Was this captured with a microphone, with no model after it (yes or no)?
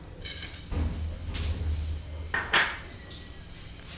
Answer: yes